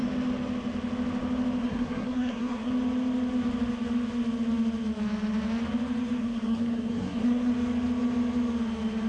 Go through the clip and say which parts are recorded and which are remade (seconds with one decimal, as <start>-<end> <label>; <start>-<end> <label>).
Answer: 0.0-1.6 recorded; 1.6-2.7 remade; 2.7-6.2 recorded; 6.2-7.5 remade; 7.5-9.1 recorded